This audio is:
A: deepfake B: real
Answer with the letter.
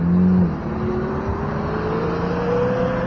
B